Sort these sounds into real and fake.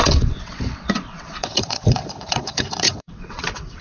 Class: fake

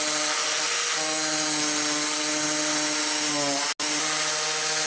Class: real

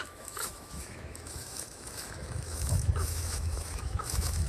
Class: fake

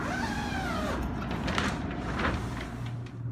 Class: real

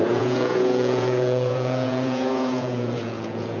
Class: fake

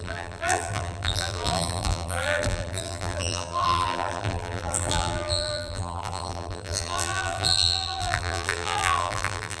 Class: fake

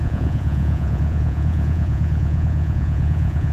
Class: fake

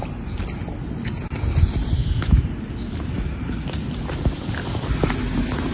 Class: real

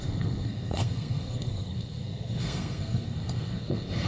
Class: fake